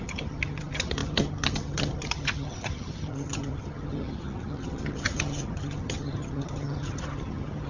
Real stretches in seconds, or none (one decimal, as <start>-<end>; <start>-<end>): none